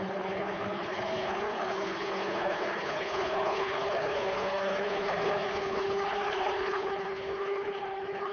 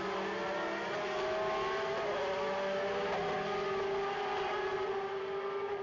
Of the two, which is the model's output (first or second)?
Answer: first